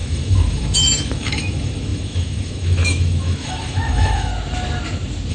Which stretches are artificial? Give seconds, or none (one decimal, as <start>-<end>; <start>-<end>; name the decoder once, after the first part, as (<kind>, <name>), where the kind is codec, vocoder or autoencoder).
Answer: 0.0-4.3 (autoencoder, DAC-VAE)